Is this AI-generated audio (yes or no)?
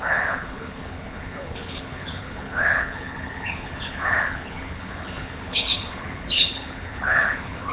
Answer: yes